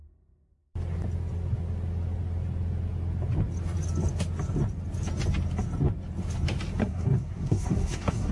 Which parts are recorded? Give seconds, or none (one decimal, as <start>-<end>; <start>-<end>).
0.0-6.8